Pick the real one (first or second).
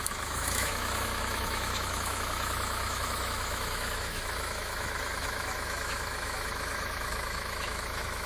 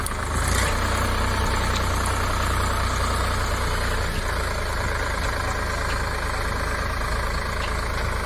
second